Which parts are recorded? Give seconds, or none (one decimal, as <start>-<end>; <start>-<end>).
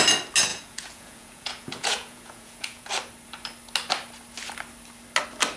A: 0.0-0.5; 2.9-5.6